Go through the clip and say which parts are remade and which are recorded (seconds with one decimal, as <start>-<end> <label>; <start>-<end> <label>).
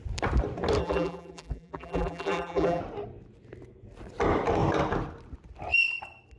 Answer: 0.0-0.8 recorded; 0.8-2.8 remade; 2.8-6.4 recorded